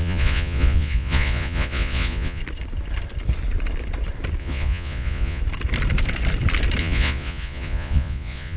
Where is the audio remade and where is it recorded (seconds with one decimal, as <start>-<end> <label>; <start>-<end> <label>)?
0.0-2.4 remade; 2.4-4.4 recorded; 4.4-5.4 remade; 5.4-6.8 recorded; 6.8-8.6 remade